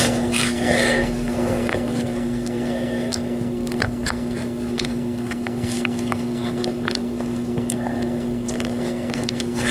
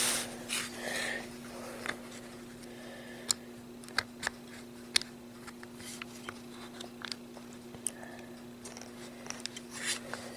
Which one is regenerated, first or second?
first